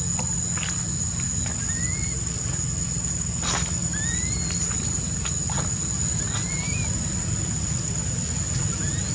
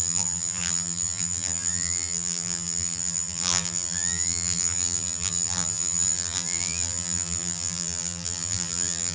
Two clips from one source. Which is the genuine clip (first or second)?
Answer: first